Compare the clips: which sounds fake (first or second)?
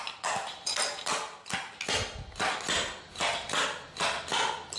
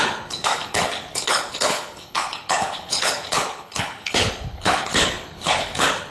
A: second